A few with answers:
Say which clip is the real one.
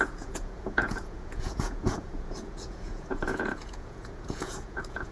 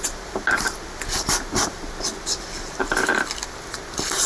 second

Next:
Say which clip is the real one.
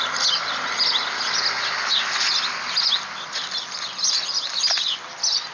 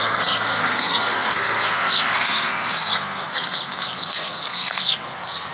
first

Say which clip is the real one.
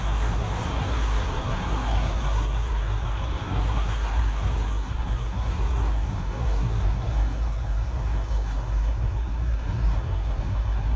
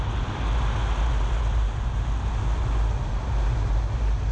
second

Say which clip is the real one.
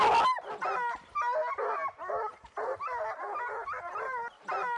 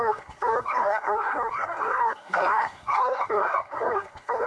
first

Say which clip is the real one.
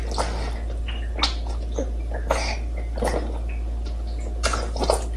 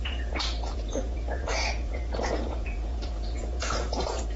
first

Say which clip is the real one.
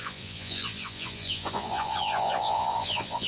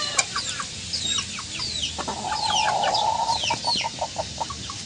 second